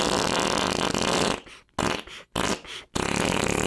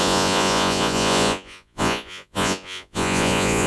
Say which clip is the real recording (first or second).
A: first